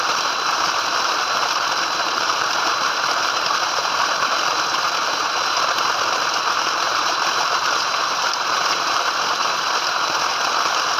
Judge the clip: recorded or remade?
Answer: remade